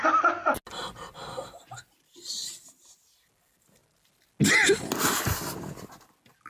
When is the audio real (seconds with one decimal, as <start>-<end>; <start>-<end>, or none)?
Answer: 0.0-6.5